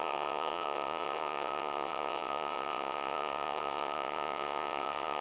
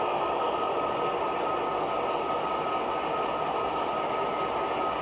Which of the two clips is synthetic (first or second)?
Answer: first